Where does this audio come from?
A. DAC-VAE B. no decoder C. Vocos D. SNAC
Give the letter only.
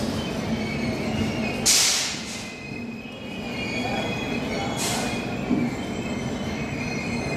B